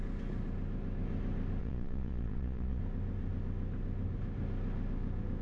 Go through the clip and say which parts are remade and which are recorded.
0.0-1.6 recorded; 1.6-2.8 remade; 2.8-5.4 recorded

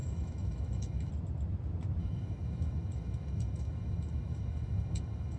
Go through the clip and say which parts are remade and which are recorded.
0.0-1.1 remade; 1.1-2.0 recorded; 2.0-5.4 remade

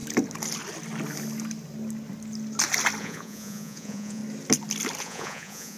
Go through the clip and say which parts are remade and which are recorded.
0.0-3.0 recorded; 3.0-4.2 remade; 4.2-5.0 recorded; 5.0-5.8 remade